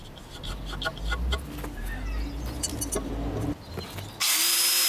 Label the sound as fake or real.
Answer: real